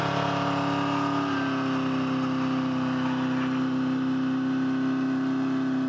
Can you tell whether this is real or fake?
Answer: real